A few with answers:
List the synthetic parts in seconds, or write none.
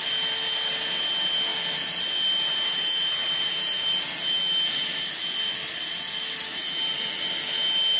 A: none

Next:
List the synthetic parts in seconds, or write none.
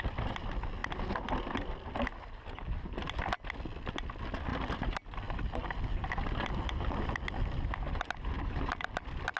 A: 4.5-6.5 (vocoder, BigVGAN v2)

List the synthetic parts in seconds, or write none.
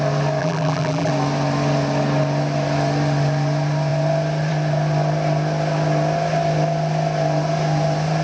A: 0.4-1.1 (vocoder, BigVGAN v2)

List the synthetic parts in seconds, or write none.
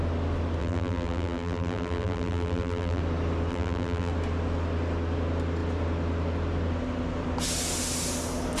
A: 0.6-3.0 (vocoder, BigVGAN v2); 3.5-4.1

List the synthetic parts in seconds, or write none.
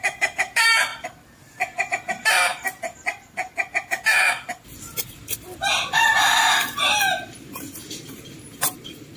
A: 0.0-0.9 (vocoder, BigVGAN v2); 1.9-2.5; 5.2-9.2